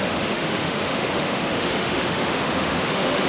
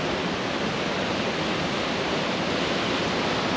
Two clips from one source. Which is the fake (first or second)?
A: first